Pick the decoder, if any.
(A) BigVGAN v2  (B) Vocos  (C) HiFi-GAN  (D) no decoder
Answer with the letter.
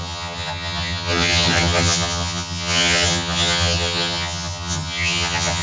C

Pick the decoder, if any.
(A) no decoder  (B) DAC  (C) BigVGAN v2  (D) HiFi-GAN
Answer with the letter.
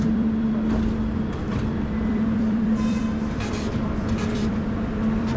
C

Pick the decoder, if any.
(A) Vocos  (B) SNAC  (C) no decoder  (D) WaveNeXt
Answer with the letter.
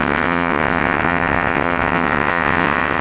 D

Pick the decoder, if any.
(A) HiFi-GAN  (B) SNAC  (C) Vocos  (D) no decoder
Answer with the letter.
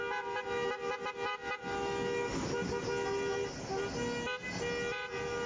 D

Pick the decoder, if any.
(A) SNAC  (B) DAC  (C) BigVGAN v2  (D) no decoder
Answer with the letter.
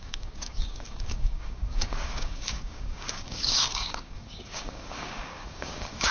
B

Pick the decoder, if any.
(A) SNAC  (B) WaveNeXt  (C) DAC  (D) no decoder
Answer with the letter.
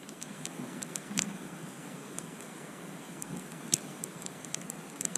A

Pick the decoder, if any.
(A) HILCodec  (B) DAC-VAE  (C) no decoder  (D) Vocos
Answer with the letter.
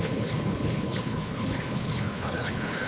A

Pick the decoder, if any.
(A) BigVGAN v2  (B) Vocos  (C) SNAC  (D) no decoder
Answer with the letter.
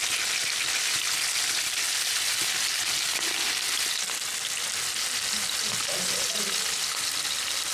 D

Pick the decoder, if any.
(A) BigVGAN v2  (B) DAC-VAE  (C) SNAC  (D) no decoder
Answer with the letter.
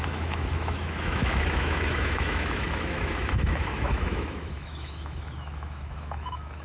B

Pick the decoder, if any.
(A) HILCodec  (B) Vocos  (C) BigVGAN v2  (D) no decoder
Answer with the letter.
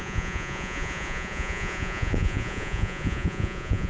B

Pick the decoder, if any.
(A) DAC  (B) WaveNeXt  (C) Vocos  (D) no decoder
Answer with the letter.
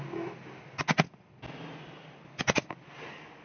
D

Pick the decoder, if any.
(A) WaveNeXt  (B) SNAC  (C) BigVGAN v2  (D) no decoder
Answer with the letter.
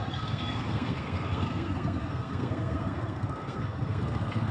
B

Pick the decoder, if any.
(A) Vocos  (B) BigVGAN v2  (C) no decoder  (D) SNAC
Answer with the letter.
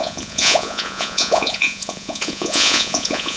A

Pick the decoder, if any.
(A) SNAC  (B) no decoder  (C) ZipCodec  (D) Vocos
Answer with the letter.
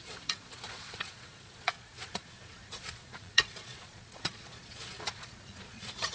D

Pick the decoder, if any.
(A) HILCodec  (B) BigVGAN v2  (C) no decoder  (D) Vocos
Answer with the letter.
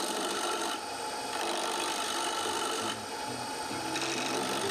B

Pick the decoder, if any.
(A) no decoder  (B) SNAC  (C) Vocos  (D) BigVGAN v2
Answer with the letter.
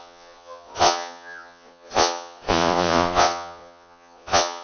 C